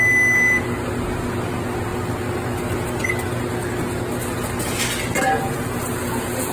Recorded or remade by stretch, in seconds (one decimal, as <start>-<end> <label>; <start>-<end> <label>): 0.0-6.5 recorded